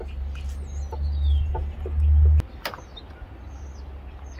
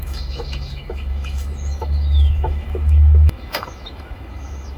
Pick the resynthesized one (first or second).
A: second